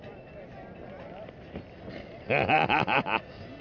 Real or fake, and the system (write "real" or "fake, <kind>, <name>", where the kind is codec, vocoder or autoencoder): real